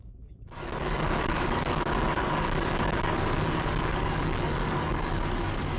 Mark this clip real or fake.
fake